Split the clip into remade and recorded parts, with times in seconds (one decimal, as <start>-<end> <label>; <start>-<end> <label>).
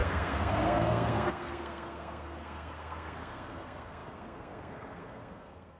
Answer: 0.0-5.8 remade